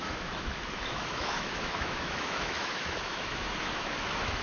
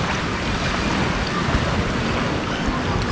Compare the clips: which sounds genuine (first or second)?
second